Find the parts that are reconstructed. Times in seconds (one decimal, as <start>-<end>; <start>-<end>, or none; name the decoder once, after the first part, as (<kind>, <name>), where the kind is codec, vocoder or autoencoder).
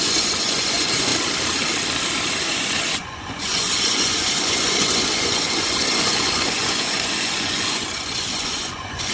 0.0-1.1 (vocoder, Vocos); 2.3-9.1